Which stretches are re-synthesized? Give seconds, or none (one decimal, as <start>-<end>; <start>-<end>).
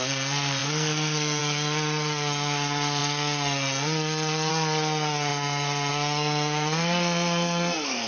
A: 0.0-8.1